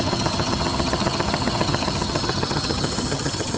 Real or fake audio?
fake